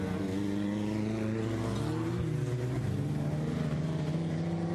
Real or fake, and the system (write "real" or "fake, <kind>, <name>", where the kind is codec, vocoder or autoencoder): real